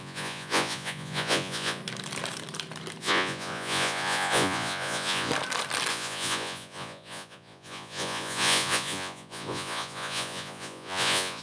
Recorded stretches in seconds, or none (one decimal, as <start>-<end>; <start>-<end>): 1.8-3.0; 5.3-5.9